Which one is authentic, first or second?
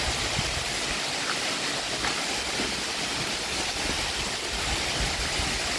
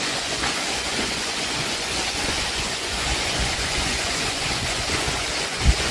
first